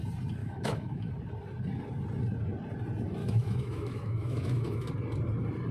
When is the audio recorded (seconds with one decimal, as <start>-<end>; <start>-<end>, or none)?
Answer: 0.0-0.4; 1.1-3.2; 4.9-5.7

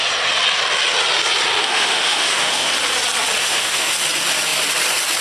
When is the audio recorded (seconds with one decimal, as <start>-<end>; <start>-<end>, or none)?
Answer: 0.0-1.6; 2.7-3.4; 3.9-5.2

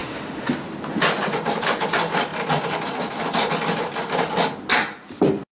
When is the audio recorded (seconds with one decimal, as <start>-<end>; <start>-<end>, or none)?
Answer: 0.5-5.6

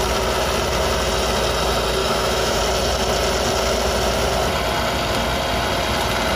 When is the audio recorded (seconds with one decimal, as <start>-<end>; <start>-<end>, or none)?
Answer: 0.0-2.0; 2.6-6.4

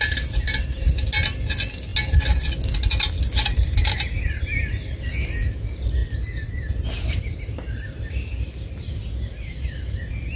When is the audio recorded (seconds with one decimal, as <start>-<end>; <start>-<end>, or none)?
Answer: 0.0-10.3